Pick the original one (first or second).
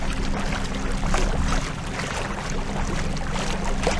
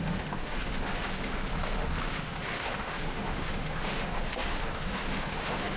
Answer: first